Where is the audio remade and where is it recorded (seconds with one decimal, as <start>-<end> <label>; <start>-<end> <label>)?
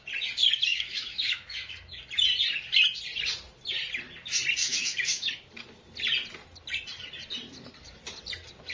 0.0-0.7 recorded; 0.7-2.0 remade; 2.0-4.6 recorded; 4.6-5.3 remade; 5.3-8.7 recorded